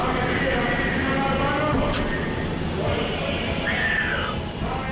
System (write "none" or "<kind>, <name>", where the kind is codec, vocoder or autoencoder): none